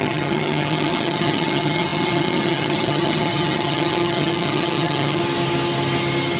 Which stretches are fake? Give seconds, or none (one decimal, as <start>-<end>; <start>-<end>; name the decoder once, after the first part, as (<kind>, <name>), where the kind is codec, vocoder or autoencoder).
0.0-5.2 (vocoder, HiFi-GAN)

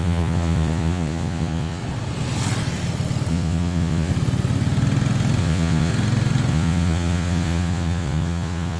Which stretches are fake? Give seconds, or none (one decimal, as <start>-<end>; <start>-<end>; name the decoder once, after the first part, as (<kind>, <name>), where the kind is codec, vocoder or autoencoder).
0.0-1.8 (vocoder, Vocos); 3.3-4.1; 5.4-5.9; 6.5-8.8

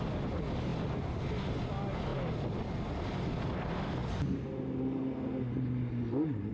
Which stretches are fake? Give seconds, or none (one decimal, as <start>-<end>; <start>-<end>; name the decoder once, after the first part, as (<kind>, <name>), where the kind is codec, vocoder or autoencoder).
none

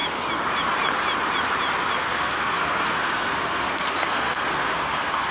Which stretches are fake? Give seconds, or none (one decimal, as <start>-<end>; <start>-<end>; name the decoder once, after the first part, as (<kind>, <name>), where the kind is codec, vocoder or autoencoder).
2.0-5.3 (codec, SNAC)